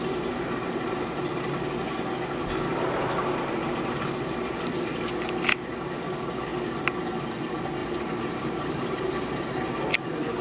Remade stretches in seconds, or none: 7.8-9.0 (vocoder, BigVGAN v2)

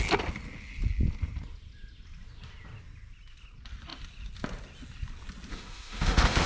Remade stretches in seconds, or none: 5.5-6.5 (autoencoder, DAC-VAE)

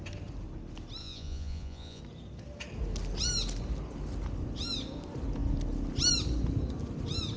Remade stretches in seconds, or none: 1.0-2.0 (vocoder, Vocos)

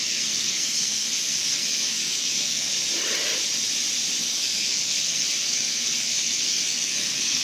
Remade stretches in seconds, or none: 0.0-2.7 (codec, SNAC); 4.2-7.4

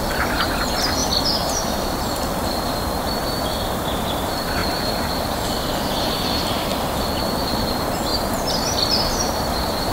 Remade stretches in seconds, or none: 0.0-1.0 (vocoder, BigVGAN v2); 2.2-6.7; 7.6-8.1; 9.1-9.9